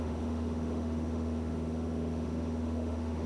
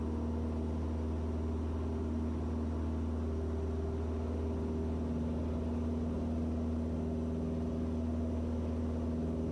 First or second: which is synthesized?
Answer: first